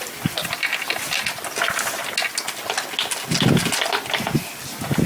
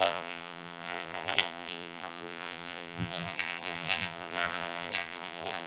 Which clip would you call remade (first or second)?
second